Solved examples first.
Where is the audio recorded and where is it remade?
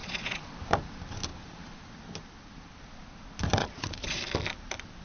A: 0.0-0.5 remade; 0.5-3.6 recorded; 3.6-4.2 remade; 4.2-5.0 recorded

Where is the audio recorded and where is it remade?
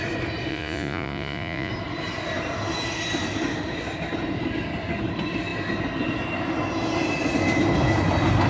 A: 0.0-0.5 recorded; 0.5-1.7 remade; 1.7-8.5 recorded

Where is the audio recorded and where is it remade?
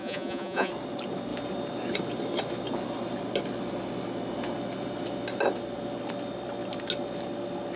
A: 0.0-0.7 remade; 0.7-7.8 recorded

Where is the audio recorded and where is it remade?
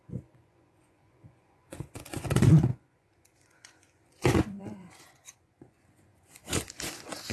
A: 0.0-7.3 remade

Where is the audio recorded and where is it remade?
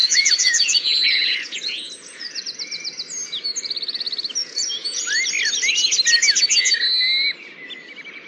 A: 0.0-2.4 remade; 2.4-4.4 recorded; 4.4-5.1 remade; 5.1-8.3 recorded